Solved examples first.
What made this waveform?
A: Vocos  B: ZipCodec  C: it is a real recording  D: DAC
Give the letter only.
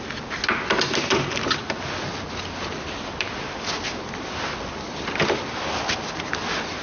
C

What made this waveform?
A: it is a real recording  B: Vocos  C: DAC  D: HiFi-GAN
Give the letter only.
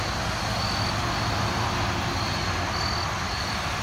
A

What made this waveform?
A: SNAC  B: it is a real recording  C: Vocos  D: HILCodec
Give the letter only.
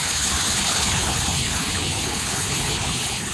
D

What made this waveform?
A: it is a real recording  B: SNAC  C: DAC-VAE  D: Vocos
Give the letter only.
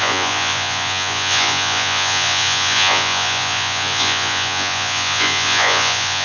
D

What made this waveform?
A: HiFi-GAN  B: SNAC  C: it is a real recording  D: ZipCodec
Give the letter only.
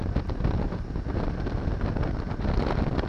C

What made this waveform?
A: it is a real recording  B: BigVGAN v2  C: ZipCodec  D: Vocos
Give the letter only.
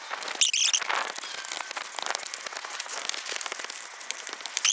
A